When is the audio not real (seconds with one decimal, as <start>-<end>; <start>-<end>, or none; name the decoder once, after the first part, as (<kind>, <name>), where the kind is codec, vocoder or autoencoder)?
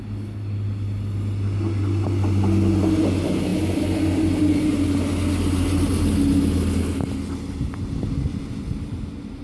none